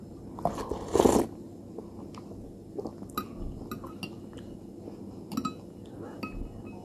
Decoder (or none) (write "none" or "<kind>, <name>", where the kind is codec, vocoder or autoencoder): none